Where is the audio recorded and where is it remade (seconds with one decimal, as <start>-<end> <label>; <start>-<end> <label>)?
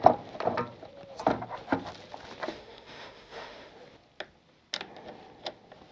0.0-2.5 recorded; 2.5-3.7 remade; 3.7-5.9 recorded